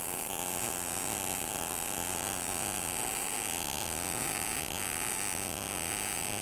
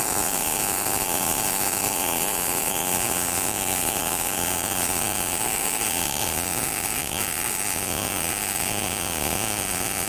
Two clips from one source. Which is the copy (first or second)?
second